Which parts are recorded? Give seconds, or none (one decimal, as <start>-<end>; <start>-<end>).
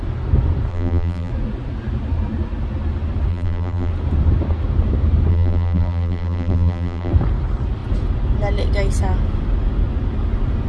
0.0-0.7; 1.3-3.3; 3.9-5.3; 7.1-10.7